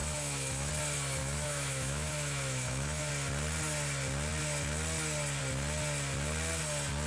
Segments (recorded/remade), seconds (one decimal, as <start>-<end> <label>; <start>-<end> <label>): 0.0-0.7 remade; 0.7-1.2 recorded; 1.2-3.1 remade; 3.1-7.1 recorded